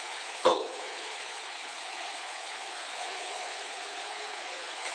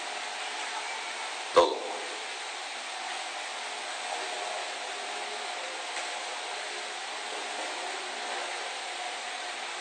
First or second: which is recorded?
second